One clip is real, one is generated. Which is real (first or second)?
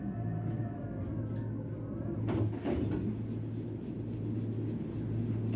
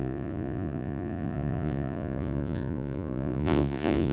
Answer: first